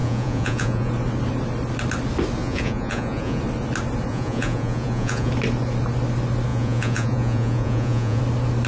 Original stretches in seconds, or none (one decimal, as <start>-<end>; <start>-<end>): 0.9-2.4; 3.4-4.1; 5.3-6.5; 8.2-8.7